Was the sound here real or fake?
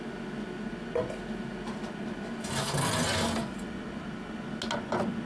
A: real